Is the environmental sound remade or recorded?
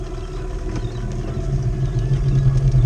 recorded